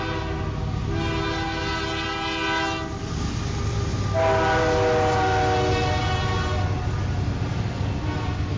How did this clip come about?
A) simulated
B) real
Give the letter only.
B